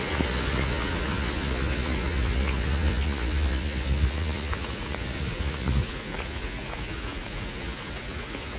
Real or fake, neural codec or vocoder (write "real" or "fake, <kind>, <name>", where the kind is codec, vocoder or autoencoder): fake, vocoder, Vocos